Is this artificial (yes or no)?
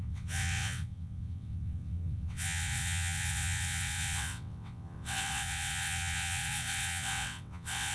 yes